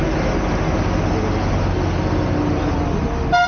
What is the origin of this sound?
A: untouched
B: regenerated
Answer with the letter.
A